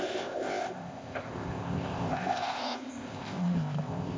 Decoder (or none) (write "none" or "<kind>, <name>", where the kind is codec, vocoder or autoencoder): codec, ZipCodec